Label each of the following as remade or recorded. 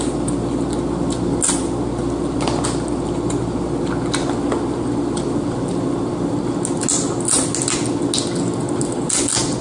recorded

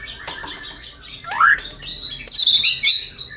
recorded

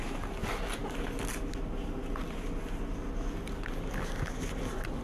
recorded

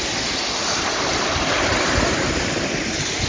recorded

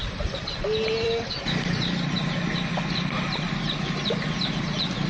recorded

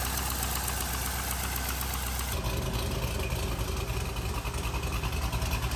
recorded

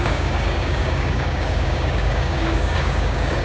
remade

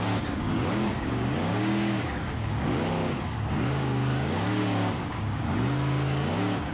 remade